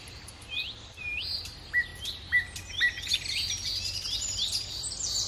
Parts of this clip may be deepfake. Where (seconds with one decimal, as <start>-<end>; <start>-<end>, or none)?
0.0-1.9; 3.3-5.3

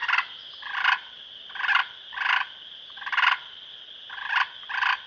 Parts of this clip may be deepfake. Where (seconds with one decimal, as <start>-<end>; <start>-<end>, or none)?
none